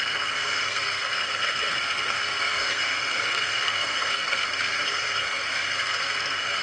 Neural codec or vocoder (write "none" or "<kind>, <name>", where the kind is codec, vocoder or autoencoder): codec, SNAC